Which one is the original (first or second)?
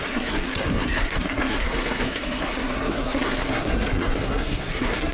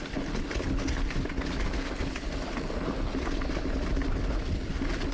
second